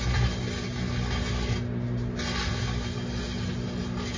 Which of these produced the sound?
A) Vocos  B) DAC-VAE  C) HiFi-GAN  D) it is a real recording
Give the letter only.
D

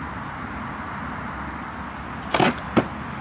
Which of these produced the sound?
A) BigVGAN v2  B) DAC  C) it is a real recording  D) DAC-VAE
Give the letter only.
C